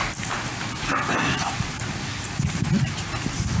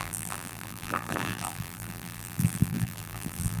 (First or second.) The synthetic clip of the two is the second